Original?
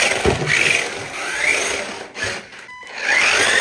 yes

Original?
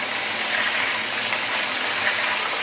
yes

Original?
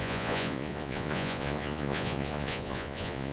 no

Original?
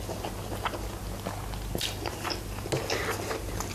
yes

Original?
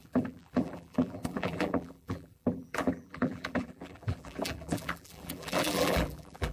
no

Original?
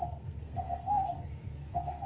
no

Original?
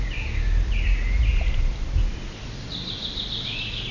yes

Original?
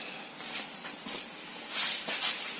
yes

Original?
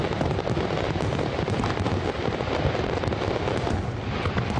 yes